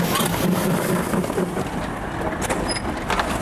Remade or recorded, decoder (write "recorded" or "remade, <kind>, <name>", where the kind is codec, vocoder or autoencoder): recorded